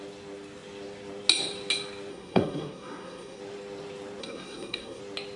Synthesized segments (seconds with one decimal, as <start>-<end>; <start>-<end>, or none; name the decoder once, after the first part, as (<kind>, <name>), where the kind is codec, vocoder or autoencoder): 2.1-3.4 (codec, SNAC); 4.2-5.0